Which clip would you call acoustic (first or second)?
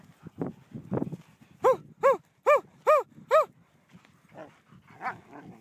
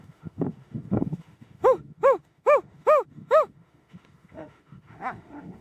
first